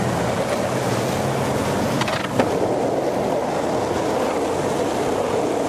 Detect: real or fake real